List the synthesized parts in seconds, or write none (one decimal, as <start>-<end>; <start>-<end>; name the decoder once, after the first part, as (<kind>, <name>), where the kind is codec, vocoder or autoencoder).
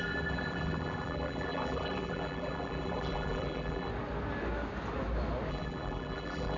0.0-3.9 (vocoder, BigVGAN v2); 5.5-6.6